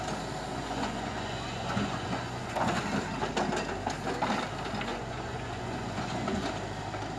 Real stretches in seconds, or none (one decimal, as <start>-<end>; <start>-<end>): 0.0-0.5; 2.8-4.9; 6.5-7.2